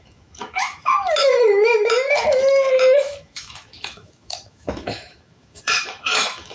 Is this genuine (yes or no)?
no